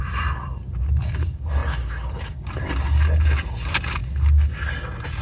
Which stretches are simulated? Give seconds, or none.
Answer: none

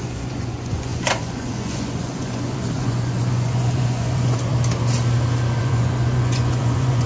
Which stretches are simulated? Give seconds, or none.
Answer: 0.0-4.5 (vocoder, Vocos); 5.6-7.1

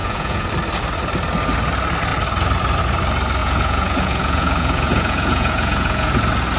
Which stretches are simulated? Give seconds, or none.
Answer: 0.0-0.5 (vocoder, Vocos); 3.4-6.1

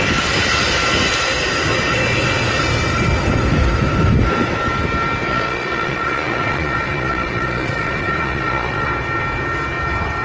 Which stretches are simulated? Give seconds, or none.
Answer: 5.3-8.9 (vocoder, Vocos)

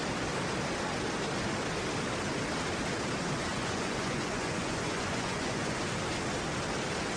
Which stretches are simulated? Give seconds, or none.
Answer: 3.5-5.8 (vocoder, Vocos)